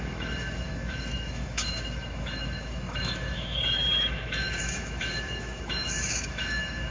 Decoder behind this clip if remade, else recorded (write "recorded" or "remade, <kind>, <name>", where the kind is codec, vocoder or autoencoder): remade, autoencoder, DAC-VAE